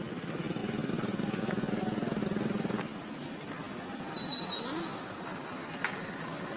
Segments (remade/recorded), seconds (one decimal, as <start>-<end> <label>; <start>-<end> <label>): 0.0-6.6 recorded